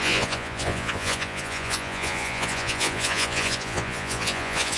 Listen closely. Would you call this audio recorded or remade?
remade